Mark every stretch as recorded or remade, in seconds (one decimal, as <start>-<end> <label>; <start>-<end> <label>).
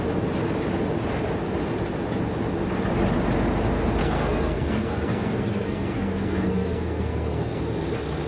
0.0-4.0 recorded; 4.0-7.6 remade; 7.6-8.3 recorded